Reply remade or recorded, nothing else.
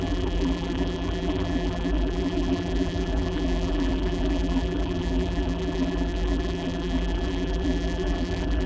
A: remade